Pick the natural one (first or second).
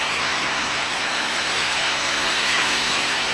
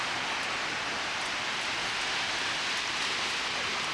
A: second